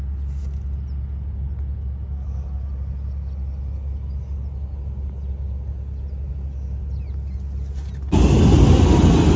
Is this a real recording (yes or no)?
yes